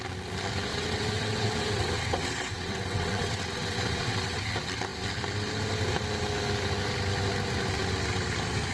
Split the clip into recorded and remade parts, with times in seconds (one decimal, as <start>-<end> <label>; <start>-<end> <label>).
0.0-0.7 recorded; 0.7-4.4 remade; 4.4-8.7 recorded